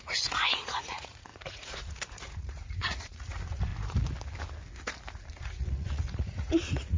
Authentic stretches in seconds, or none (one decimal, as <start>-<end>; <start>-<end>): 3.7-5.4